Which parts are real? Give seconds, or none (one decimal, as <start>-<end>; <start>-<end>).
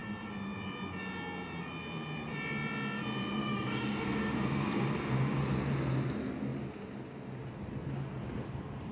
0.0-3.4; 5.4-8.9